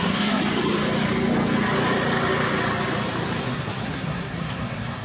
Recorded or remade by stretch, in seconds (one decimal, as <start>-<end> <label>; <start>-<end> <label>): 0.0-0.4 remade; 0.4-3.4 recorded; 3.4-5.0 remade